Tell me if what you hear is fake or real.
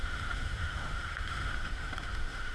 fake